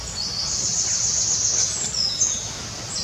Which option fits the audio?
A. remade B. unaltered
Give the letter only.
B